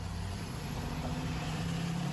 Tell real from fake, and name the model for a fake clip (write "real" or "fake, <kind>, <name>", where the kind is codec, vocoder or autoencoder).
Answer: fake, vocoder, BigVGAN v2